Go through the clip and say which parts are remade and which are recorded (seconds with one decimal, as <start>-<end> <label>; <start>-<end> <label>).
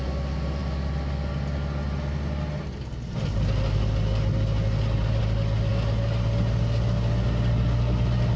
0.0-8.4 recorded